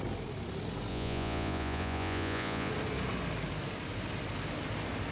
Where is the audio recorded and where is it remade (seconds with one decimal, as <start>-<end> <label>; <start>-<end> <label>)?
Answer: 0.0-0.9 recorded; 0.9-2.7 remade; 2.7-5.1 recorded

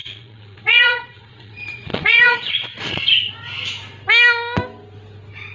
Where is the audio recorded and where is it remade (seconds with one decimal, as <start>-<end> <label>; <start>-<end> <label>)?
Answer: 0.0-3.3 remade; 3.3-5.5 recorded

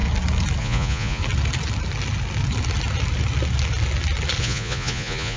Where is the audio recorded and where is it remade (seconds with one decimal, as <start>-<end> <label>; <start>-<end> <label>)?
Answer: 0.0-0.6 recorded; 0.6-1.2 remade; 1.2-4.4 recorded; 4.4-5.4 remade